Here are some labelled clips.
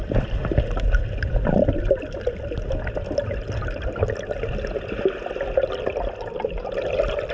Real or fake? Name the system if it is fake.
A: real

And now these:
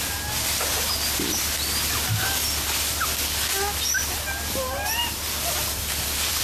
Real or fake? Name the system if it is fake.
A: real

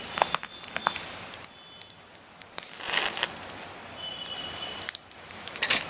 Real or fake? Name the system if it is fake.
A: real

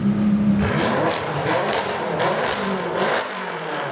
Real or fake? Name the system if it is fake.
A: fake, vocoder, BigVGAN v2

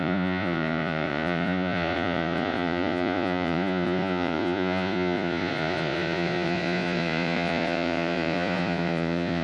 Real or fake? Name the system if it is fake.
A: fake, vocoder, Vocos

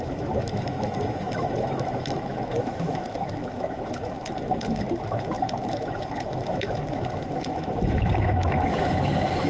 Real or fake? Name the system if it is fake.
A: fake, autoencoder, DAC-VAE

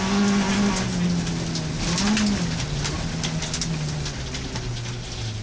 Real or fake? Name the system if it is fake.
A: real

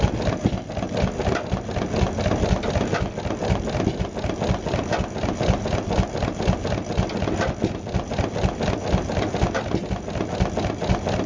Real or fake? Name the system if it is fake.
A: real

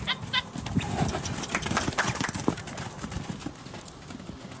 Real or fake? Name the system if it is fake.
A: real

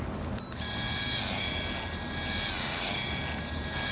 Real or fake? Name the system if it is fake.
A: real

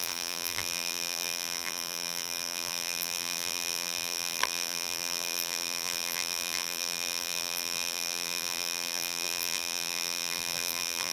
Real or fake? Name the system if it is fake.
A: fake, vocoder, BigVGAN v2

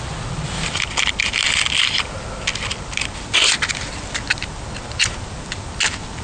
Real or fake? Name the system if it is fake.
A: real